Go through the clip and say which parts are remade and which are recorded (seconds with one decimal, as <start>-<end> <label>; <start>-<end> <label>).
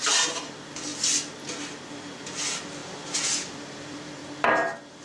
0.0-0.9 remade; 0.9-1.9 recorded; 1.9-2.8 remade; 2.8-3.5 recorded; 3.5-4.2 remade; 4.2-5.0 recorded